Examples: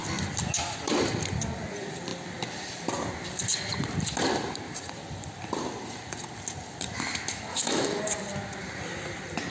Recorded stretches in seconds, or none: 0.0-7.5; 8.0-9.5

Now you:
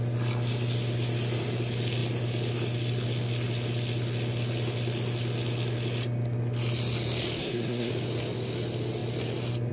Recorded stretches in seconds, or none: 0.0-7.4; 7.9-9.7

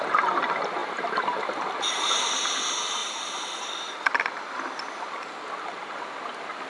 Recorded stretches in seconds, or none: 0.0-6.7